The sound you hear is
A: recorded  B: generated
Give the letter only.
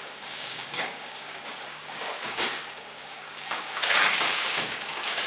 B